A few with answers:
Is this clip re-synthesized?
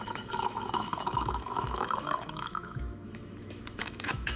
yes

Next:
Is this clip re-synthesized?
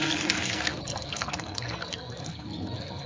yes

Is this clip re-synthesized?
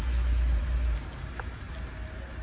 no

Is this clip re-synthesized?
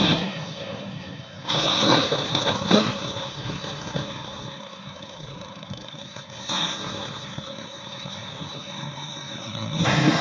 yes